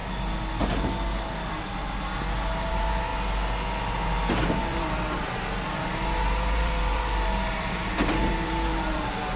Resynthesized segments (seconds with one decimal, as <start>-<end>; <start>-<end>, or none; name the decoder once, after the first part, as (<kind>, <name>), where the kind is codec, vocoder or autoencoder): 2.7-3.1 (vocoder, BigVGAN v2); 4.3-9.4